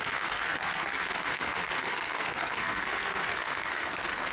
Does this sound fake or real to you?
fake